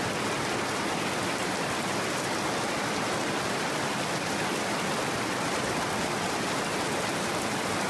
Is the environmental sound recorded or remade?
recorded